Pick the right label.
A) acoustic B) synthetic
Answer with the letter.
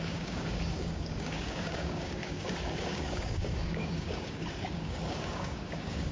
B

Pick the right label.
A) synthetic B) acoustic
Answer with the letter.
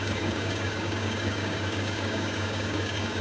A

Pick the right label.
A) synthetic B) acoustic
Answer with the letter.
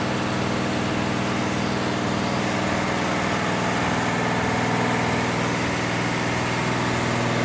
B